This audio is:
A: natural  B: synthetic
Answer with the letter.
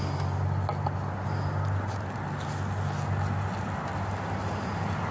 A